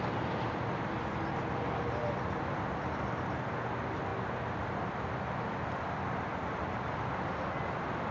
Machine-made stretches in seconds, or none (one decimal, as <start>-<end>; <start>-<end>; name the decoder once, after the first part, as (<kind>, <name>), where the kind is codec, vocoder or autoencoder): none